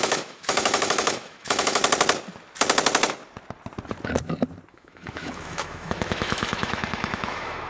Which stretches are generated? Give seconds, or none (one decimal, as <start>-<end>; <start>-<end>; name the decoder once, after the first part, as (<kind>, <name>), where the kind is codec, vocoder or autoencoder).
0.0-1.8 (autoencoder, DAC-VAE); 4.7-7.7